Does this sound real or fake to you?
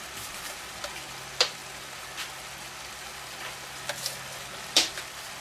real